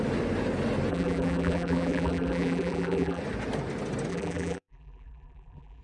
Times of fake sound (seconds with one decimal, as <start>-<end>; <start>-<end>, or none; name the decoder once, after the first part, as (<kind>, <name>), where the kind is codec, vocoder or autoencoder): 0.9-3.2 (vocoder, BigVGAN v2); 4.1-5.8